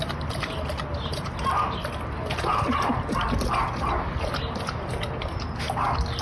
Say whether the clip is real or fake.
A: real